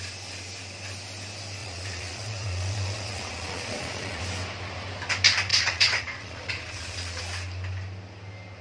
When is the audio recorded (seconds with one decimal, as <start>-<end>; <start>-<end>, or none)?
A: 0.0-1.6; 4.2-5.5; 7.2-8.6